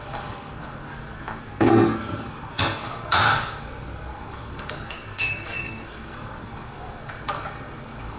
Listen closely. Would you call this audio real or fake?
fake